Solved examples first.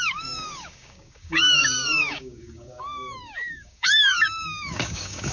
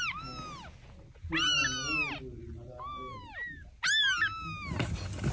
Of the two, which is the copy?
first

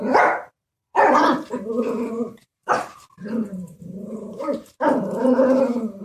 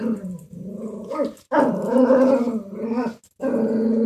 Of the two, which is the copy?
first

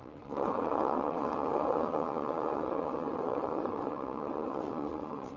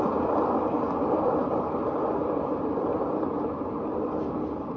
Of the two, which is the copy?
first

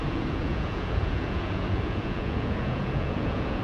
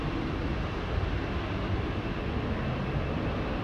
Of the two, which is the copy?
first